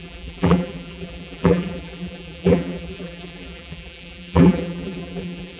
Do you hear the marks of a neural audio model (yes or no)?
yes